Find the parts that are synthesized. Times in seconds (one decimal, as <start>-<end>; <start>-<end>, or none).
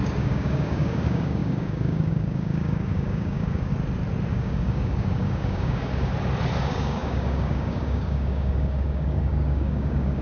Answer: 0.0-3.7; 4.3-6.1; 6.6-10.2